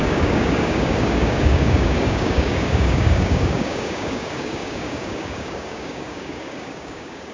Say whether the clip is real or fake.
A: fake